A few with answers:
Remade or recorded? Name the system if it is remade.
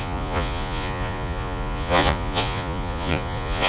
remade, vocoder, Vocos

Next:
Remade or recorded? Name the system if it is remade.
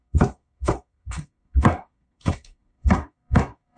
remade, codec, SNAC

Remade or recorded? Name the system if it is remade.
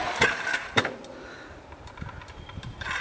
recorded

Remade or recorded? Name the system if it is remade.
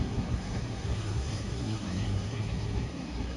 remade, codec, SNAC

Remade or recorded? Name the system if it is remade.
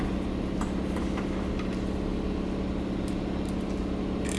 recorded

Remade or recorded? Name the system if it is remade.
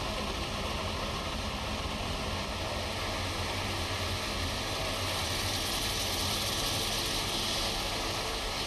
recorded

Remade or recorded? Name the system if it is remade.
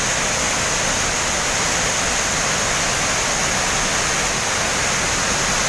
recorded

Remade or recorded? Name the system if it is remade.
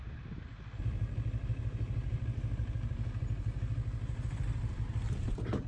recorded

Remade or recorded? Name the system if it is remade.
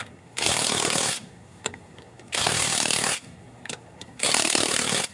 remade, codec, SNAC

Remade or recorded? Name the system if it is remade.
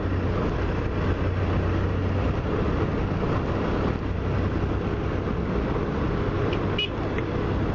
recorded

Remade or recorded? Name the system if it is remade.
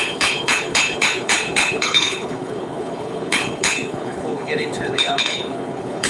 remade, codec, HILCodec